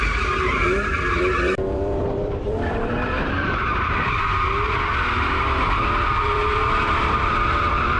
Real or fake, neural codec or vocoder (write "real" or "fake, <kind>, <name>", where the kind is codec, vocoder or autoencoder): fake, vocoder, BigVGAN v2